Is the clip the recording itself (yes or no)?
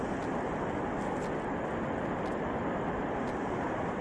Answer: yes